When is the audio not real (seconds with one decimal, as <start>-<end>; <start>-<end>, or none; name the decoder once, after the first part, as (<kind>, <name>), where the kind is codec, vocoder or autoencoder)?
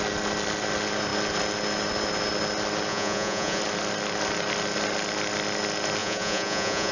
2.9-3.6 (vocoder, Vocos); 6.0-6.9